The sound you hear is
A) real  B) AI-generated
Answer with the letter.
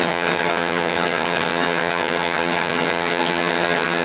B